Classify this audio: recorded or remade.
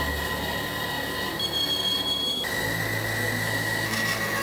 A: recorded